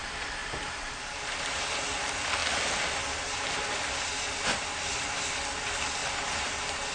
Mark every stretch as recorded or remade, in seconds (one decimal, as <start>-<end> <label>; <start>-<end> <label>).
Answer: 0.0-0.4 recorded; 0.4-1.9 remade; 1.9-6.0 recorded; 6.0-6.5 remade; 6.5-6.9 recorded